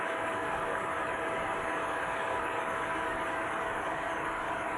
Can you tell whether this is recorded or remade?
remade